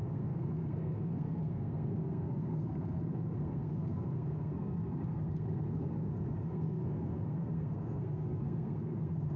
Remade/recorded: remade